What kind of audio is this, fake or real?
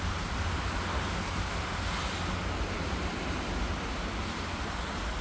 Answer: real